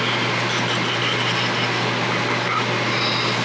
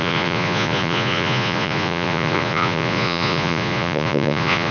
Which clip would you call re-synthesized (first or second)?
second